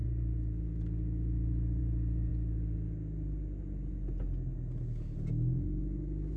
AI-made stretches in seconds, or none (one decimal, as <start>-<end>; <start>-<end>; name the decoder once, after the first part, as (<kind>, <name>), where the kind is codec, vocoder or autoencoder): none